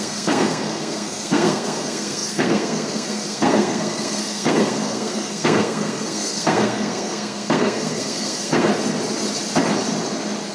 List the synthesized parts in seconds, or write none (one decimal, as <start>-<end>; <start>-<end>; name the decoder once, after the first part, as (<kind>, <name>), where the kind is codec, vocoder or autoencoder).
0.0-8.7 (codec, SNAC)